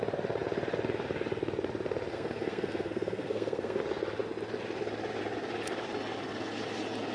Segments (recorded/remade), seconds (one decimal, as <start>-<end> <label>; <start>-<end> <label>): 0.0-2.1 recorded; 2.1-3.8 remade; 3.8-7.1 recorded